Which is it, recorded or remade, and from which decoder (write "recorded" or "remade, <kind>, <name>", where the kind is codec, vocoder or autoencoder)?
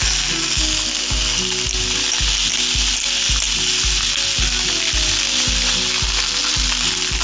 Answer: recorded